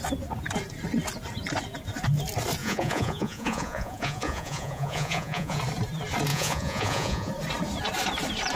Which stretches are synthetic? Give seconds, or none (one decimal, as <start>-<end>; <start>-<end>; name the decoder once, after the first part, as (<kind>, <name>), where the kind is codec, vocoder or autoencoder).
2.6-5.6 (vocoder, Vocos); 6.3-7.3